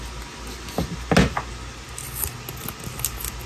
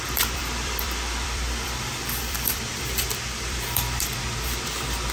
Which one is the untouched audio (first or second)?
first